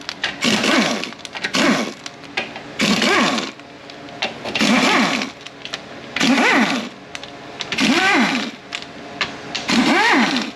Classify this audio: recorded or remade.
recorded